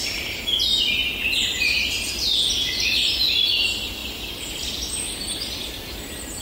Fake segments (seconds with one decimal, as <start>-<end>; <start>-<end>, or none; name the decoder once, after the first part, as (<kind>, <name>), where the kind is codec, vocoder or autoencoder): none